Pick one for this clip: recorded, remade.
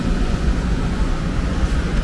remade